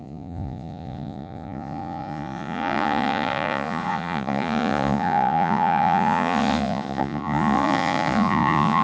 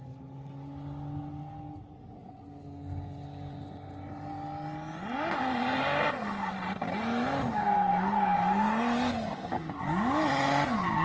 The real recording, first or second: second